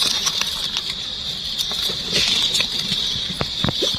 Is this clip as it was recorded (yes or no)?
yes